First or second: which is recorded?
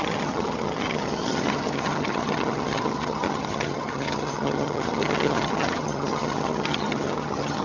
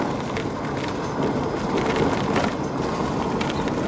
second